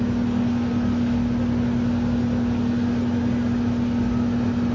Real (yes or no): yes